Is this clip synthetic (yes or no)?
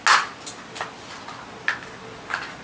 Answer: no